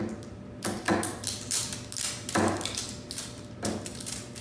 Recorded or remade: recorded